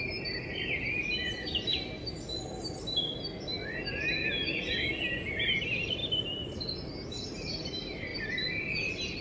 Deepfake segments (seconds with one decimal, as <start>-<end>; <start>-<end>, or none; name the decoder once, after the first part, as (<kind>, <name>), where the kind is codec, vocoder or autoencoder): none